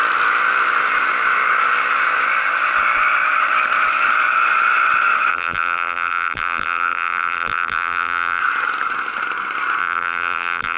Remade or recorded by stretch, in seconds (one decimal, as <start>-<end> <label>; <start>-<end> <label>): 0.0-5.3 recorded; 5.3-8.4 remade; 8.4-9.8 recorded; 9.8-10.8 remade